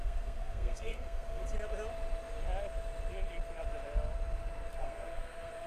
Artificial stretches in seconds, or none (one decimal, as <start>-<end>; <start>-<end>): 0.0-1.4; 4.8-5.7